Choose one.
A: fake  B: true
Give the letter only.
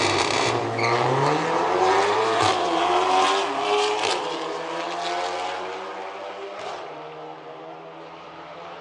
A